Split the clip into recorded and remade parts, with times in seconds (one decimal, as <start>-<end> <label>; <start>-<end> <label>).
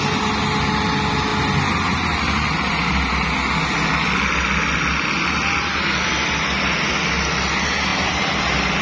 0.0-8.8 recorded